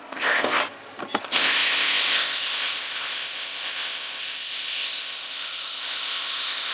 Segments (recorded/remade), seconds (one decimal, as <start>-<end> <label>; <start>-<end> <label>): 0.0-0.6 remade; 0.6-1.2 recorded; 1.2-6.7 remade

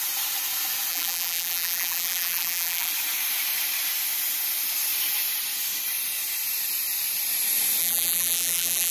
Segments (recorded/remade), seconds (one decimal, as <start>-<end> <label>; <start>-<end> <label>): 0.0-0.9 recorded; 0.9-2.9 remade; 2.9-7.8 recorded; 7.8-8.9 remade

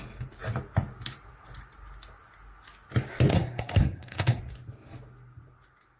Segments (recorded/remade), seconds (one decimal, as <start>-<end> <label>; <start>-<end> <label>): 0.0-3.3 recorded; 3.3-4.4 remade; 4.4-6.0 recorded

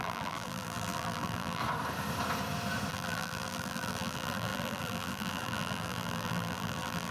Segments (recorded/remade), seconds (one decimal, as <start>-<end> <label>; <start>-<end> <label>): 0.0-1.6 remade; 1.6-2.9 recorded; 2.9-7.1 remade